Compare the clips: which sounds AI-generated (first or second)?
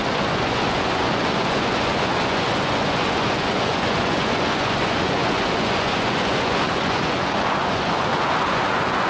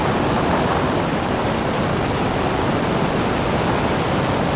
first